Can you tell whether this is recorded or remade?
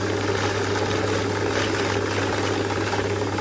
recorded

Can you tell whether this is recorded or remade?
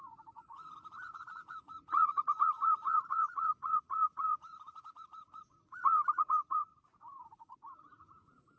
remade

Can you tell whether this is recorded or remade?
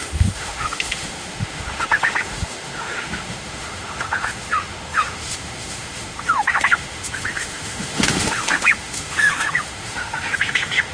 remade